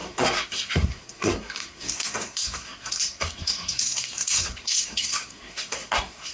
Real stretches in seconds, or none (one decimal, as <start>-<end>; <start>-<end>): none